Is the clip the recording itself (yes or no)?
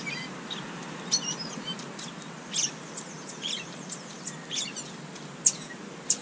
yes